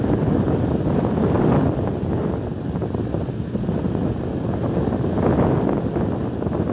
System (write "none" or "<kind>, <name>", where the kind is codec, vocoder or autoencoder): none